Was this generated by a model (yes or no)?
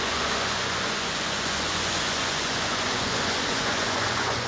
yes